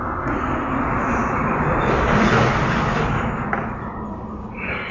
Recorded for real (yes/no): yes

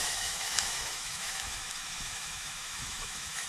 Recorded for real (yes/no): no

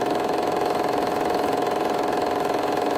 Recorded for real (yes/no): no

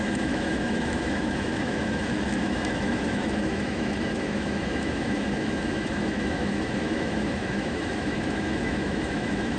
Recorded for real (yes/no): no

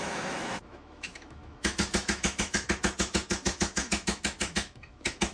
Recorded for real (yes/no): no